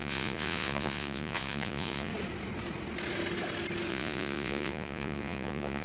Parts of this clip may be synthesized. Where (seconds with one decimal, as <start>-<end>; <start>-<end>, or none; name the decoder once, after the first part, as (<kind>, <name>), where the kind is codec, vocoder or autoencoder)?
0.0-2.1 (vocoder, Vocos); 3.9-5.8